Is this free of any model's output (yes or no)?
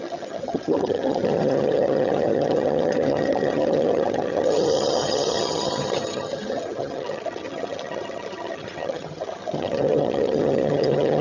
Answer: no